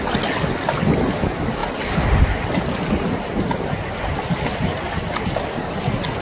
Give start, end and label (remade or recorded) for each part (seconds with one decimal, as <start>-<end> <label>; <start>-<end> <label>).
0.0-6.2 recorded